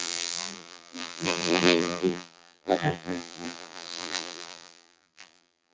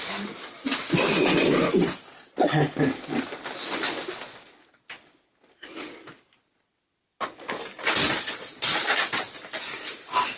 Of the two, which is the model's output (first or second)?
first